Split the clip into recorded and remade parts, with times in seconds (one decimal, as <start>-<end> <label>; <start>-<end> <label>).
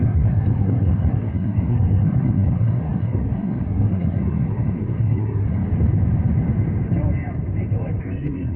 0.0-5.6 remade; 5.6-8.0 recorded; 8.0-8.6 remade